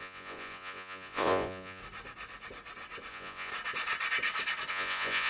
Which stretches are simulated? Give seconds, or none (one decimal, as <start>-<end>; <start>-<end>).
0.0-1.8; 3.1-3.5; 4.7-5.3